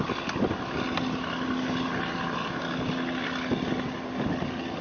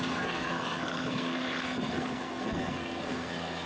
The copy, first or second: second